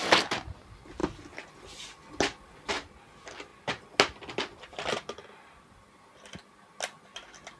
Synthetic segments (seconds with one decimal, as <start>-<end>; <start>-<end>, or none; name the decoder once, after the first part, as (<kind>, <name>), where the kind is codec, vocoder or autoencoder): none